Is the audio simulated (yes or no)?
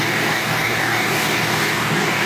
yes